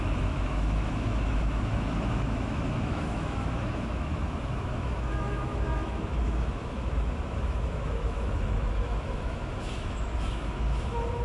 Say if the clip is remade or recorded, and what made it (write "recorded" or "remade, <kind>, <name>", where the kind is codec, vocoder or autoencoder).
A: remade, autoencoder, DAC-VAE